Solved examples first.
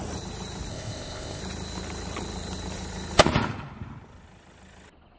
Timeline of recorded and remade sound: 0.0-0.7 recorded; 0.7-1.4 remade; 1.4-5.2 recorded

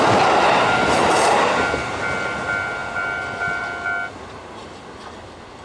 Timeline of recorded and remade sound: 0.0-2.8 recorded; 2.8-3.6 remade; 3.6-5.6 recorded

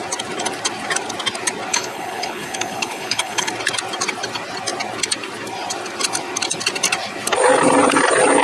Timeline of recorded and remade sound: 0.0-1.7 recorded; 1.7-3.5 remade; 3.5-8.4 recorded

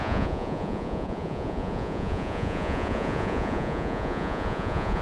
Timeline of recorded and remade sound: 0.0-5.0 remade

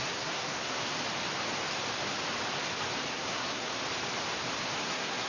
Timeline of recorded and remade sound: 0.0-0.8 remade; 0.8-3.1 recorded; 3.1-3.8 remade; 3.8-4.8 recorded; 4.8-5.3 remade

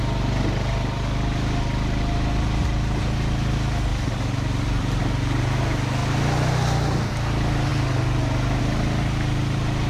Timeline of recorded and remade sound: 0.0-3.9 recorded; 3.9-5.0 remade; 5.0-9.9 recorded